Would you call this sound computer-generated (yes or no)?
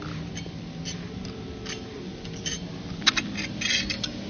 no